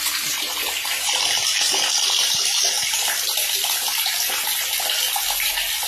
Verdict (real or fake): real